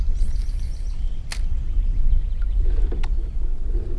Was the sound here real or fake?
real